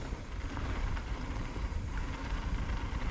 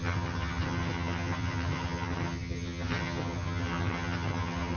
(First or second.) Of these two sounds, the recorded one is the first